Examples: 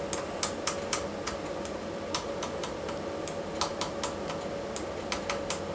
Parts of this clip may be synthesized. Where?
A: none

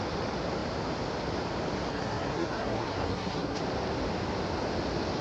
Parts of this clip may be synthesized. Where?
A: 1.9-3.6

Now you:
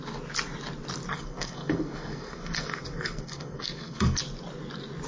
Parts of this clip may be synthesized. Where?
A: 1.1-4.2

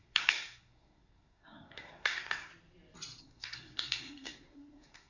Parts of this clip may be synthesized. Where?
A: 0.0-2.5; 3.2-5.1

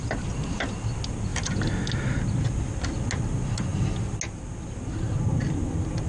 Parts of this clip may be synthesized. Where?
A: none

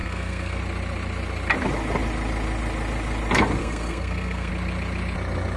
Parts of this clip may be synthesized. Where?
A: 0.0-0.6; 3.6-4.5

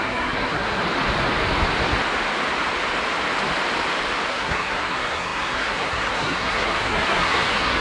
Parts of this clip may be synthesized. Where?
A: 0.0-0.8; 4.3-7.8

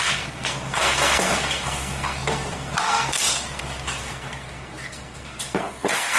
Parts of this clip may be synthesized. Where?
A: 0.0-6.2